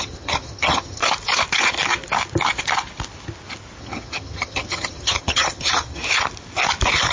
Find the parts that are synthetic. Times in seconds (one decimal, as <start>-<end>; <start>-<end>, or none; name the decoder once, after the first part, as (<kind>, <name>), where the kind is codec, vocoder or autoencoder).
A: 0.0-1.0 (vocoder, HiFi-GAN); 3.8-6.0